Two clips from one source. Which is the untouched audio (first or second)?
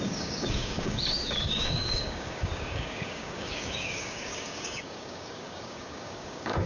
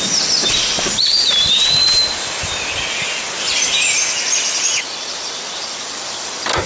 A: second